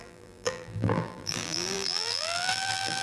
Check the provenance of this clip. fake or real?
fake